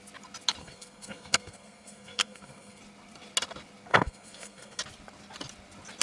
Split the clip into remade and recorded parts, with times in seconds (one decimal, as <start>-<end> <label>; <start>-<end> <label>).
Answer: 0.0-0.6 recorded; 0.6-2.8 remade; 2.8-3.9 recorded; 3.9-4.8 remade; 4.8-6.0 recorded